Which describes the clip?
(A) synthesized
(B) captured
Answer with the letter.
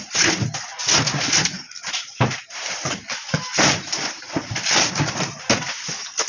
B